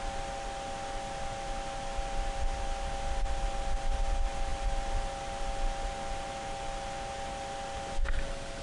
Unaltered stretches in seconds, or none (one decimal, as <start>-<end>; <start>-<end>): 0.0-8.6

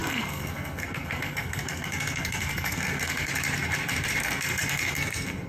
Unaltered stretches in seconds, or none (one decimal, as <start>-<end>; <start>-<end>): 3.3-4.2

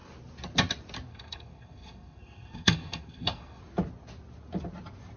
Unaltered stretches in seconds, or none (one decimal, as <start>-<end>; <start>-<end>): 0.0-1.1; 3.6-5.2

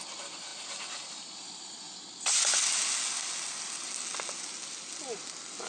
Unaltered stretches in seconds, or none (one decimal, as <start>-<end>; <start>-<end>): 0.0-5.7

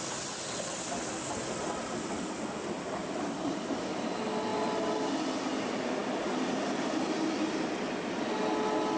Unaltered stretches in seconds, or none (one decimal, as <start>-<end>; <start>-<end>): 0.0-3.0; 3.7-4.5; 5.1-9.0